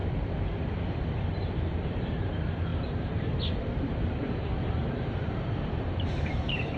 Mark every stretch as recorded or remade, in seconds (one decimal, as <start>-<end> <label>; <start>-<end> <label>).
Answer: 0.0-0.8 recorded; 0.8-6.8 remade